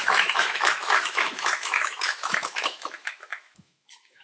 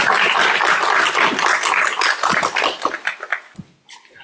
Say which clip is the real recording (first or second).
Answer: second